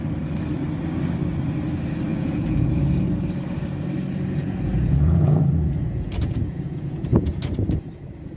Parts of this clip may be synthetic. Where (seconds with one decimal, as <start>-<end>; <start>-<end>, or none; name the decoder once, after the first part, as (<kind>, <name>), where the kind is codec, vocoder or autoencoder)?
2.1-2.8 (vocoder, Vocos); 4.4-8.4